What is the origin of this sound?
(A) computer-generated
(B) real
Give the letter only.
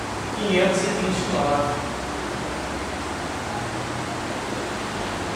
B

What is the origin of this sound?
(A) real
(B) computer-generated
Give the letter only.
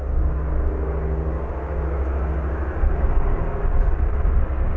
A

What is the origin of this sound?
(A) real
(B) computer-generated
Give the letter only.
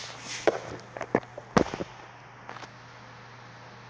A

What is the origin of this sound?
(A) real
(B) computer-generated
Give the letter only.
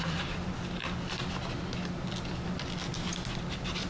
A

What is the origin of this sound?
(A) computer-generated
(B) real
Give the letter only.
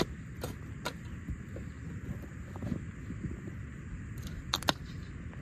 B